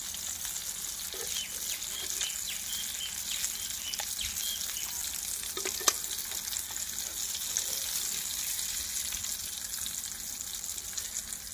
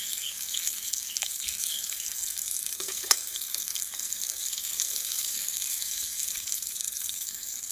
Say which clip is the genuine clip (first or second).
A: first